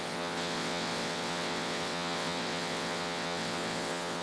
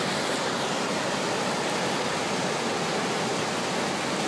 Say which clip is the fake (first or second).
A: first